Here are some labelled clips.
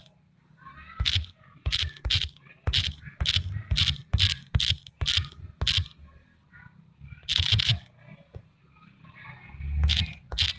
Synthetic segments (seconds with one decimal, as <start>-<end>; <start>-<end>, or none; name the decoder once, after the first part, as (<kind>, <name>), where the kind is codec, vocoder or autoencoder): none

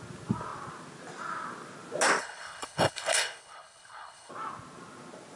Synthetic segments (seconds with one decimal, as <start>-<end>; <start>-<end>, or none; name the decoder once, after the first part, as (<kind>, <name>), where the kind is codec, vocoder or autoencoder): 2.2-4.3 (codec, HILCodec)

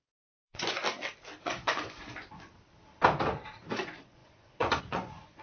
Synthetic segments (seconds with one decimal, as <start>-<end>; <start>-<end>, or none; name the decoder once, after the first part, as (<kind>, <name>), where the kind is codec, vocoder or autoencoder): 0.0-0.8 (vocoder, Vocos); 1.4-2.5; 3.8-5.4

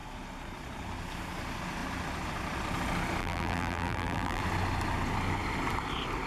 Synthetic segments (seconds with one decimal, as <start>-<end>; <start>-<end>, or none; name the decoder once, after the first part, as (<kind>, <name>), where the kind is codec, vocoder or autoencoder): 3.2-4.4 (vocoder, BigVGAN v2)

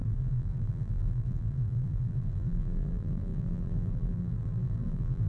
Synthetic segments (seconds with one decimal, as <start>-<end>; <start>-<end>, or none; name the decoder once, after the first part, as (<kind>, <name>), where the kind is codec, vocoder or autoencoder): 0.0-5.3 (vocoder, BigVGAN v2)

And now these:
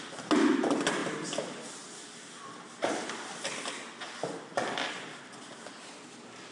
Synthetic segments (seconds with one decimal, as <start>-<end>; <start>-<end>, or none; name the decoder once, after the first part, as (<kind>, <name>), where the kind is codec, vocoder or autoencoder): none